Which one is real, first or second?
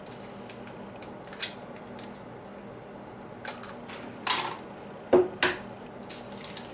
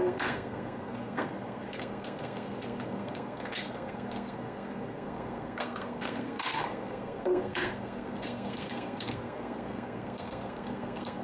first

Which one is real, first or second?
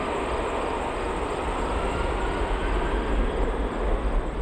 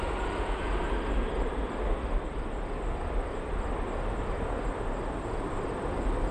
first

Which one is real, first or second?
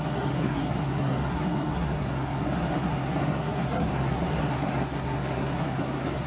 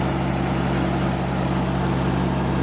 second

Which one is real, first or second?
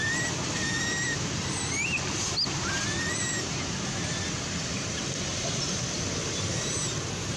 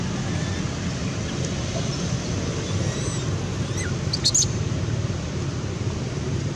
second